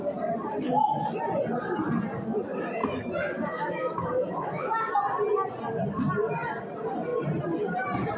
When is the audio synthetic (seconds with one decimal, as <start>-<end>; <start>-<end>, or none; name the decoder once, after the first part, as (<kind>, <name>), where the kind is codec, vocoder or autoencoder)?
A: 2.8-4.9 (autoencoder, DAC-VAE)